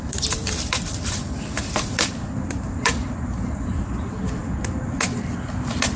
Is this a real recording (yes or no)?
no